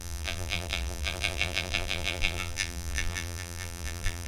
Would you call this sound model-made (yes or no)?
yes